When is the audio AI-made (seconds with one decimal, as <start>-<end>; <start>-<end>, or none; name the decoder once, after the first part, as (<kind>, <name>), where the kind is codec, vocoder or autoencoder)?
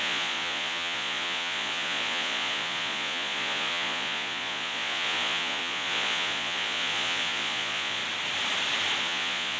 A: 0.0-8.0 (vocoder, Vocos); 9.0-9.6